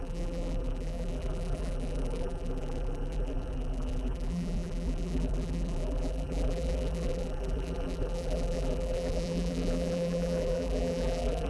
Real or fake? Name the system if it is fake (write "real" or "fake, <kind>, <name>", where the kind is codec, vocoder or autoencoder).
fake, vocoder, BigVGAN v2